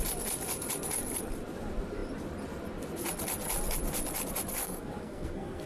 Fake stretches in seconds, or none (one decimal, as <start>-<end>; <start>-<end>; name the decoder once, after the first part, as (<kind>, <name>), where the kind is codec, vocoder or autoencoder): 4.6-5.7 (codec, SNAC)